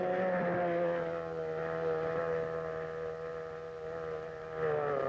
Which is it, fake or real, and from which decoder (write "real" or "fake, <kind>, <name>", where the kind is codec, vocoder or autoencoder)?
real